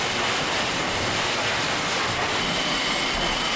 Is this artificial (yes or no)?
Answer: no